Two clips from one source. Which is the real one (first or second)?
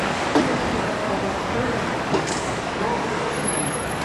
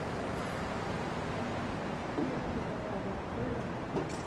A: second